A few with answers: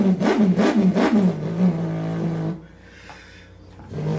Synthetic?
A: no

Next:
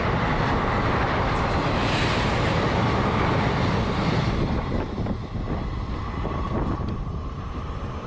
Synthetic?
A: no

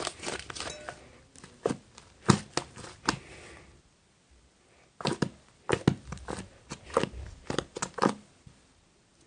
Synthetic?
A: no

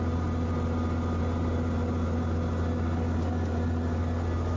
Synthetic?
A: no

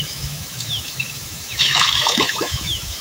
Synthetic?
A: yes